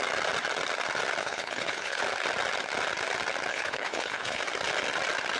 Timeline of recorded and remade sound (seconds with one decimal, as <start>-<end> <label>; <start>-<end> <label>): 0.0-1.2 recorded; 1.2-2.0 remade; 2.0-3.5 recorded; 3.5-4.4 remade; 4.4-5.4 recorded